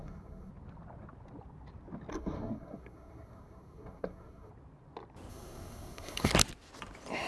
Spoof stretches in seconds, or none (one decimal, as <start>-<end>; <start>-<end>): 0.0-0.5; 2.1-4.5; 5.3-6.3